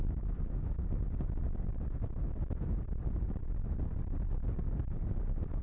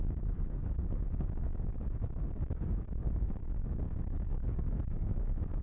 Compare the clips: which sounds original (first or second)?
first